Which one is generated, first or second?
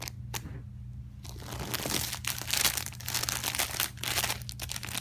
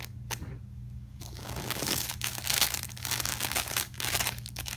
second